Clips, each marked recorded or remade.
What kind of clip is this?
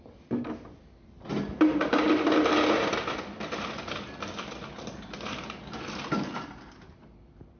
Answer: recorded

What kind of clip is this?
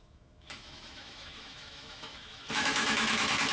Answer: remade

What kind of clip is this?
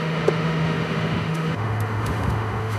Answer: remade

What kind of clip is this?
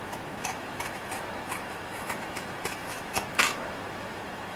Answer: remade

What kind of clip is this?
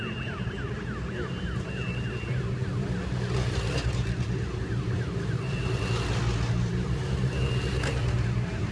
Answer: recorded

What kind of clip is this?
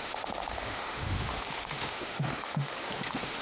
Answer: remade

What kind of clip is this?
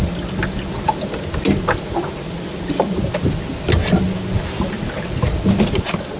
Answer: recorded